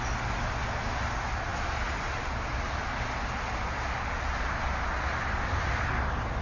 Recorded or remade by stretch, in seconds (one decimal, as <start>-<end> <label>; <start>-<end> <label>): 0.0-6.4 recorded